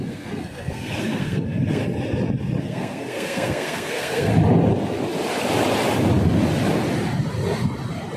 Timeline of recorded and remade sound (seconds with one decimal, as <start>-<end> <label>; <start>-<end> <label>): 0.0-1.8 remade; 1.8-2.6 recorded; 2.6-4.3 remade; 4.3-8.2 recorded